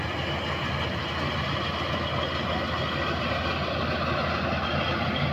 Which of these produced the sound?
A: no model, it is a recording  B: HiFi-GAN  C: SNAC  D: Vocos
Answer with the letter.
A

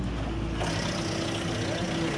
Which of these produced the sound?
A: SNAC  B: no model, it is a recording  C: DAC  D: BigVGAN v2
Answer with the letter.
B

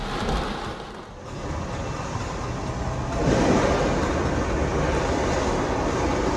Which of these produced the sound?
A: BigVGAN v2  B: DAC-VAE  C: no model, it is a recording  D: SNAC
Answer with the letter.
C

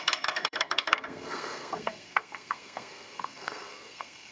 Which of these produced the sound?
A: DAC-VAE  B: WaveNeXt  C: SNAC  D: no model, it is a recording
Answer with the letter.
C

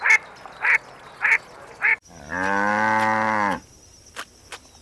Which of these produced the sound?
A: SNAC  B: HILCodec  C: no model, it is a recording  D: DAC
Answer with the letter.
C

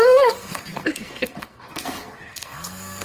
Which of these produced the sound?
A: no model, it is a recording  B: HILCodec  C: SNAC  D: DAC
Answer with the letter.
C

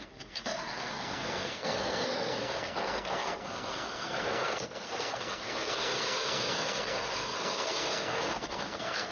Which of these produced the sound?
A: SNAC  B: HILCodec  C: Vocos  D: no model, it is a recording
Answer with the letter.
A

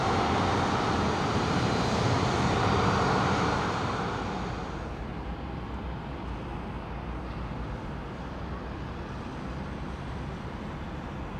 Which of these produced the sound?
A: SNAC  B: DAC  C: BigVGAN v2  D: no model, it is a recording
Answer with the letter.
D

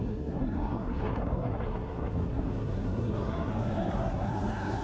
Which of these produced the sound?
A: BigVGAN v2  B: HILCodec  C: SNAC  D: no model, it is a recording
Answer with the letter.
C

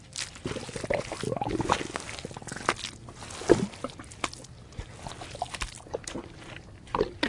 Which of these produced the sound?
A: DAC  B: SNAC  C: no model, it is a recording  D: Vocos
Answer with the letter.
C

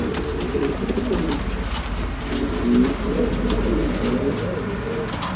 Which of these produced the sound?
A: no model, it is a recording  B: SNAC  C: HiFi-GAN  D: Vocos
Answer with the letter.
A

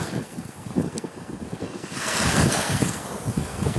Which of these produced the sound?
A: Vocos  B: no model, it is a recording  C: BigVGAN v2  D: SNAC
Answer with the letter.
D